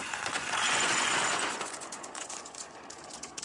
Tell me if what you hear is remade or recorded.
remade